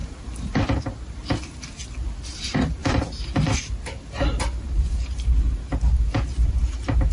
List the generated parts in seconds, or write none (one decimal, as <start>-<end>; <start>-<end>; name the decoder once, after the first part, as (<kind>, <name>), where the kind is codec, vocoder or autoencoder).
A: 0.0-0.6 (vocoder, BigVGAN v2); 2.8-7.1

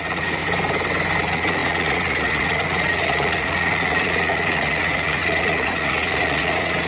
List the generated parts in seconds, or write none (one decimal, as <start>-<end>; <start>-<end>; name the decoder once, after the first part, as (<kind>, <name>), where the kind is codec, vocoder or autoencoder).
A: 0.0-0.4 (vocoder, Vocos); 1.2-6.9

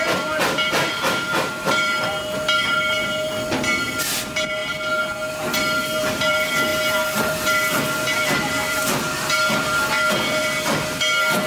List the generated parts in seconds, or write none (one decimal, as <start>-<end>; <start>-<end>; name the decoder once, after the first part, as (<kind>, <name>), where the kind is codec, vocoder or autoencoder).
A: 0.0-4.6 (vocoder, BigVGAN v2); 5.3-11.5

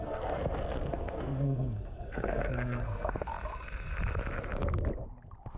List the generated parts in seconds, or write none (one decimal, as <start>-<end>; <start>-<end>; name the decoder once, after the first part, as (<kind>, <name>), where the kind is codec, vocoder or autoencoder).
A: 0.0-3.3 (codec, SNAC)

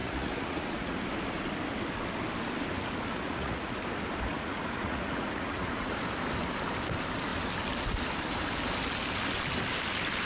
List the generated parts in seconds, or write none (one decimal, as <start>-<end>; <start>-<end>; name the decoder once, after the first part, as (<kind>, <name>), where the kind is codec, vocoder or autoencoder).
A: 0.0-1.0 (vocoder, Vocos); 3.1-3.8; 4.3-5.9